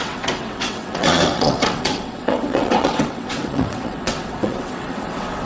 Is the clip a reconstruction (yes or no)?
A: yes